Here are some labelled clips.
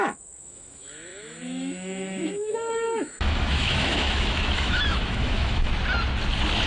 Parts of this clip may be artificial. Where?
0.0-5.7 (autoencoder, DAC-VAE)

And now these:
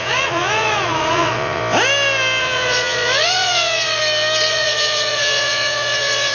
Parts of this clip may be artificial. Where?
0.0-1.6 (vocoder, Vocos); 2.4-4.0; 4.5-6.3

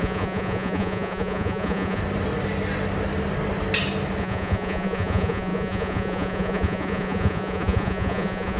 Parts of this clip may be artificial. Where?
0.0-2.0 (vocoder, Vocos); 4.2-8.6

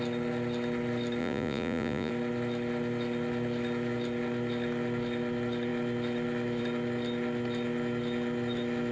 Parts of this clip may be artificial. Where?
1.2-2.1 (vocoder, Vocos)

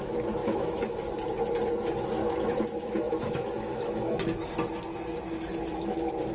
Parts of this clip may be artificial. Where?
0.4-1.1 (autoencoder, DAC-VAE); 2.2-4.5

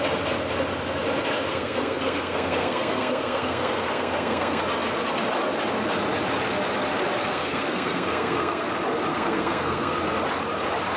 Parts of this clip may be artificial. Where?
1.5-4.6 (codec, SNAC); 7.3-8.7; 9.1-9.9